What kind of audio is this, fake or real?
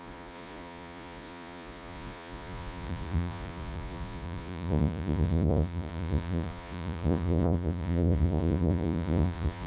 fake